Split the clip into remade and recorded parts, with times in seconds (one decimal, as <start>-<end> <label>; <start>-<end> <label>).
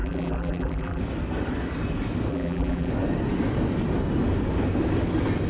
0.0-1.0 remade; 1.0-2.3 recorded; 2.3-2.9 remade; 2.9-5.5 recorded